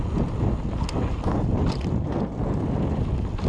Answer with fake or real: real